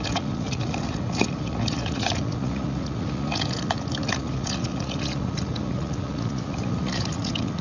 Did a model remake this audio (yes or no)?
yes